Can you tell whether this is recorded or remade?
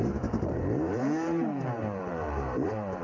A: remade